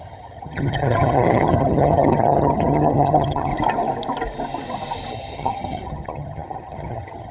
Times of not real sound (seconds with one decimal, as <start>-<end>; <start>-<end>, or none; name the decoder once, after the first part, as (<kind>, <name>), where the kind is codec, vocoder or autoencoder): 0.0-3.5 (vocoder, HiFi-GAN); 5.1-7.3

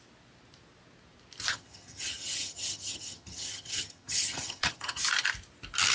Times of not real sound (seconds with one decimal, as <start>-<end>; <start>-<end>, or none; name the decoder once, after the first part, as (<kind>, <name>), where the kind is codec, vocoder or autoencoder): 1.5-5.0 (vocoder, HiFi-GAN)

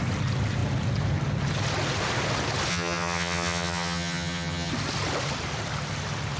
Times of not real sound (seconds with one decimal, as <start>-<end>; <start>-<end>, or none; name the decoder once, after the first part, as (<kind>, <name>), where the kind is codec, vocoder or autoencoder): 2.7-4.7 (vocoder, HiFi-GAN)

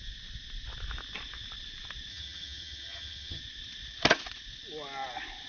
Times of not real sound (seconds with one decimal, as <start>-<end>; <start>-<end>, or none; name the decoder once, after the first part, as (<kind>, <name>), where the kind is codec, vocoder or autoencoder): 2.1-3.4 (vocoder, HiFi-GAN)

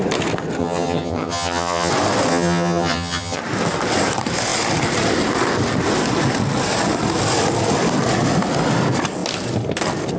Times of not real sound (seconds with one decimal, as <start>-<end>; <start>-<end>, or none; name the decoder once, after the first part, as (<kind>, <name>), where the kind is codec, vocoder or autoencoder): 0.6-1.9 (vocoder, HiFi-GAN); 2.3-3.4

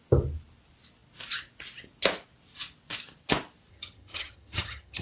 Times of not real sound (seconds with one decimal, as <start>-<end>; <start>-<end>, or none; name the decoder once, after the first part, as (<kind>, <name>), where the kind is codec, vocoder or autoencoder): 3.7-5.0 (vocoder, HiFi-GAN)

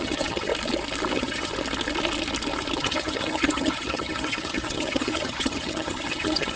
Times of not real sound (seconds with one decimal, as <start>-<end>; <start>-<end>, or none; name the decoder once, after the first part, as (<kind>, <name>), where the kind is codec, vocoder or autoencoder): 0.0-0.5 (vocoder, HiFi-GAN); 1.1-1.5; 2.8-6.6

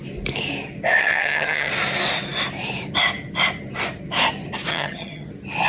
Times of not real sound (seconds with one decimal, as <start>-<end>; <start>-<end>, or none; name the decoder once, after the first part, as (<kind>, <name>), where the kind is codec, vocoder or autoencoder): 1.0-1.7 (vocoder, HiFi-GAN); 4.7-5.3